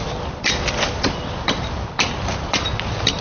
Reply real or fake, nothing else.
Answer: real